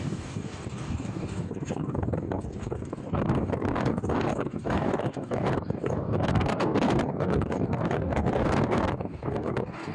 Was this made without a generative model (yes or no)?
no